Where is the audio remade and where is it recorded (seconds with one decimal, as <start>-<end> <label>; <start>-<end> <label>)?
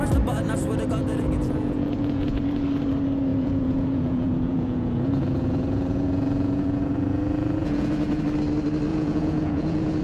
0.0-1.0 recorded; 1.0-2.4 remade; 2.4-3.3 recorded; 3.3-8.2 remade; 8.2-8.9 recorded; 8.9-10.0 remade